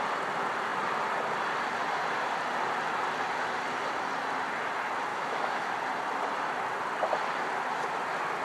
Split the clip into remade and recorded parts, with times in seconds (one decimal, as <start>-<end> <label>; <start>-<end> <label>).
0.0-5.1 recorded; 5.1-5.7 remade; 5.7-8.4 recorded